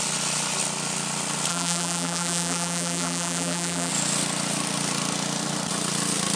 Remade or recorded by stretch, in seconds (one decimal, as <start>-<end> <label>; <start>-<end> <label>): 0.0-1.5 recorded; 1.5-3.9 remade; 3.9-6.4 recorded